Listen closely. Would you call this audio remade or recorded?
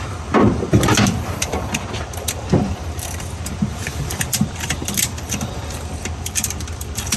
remade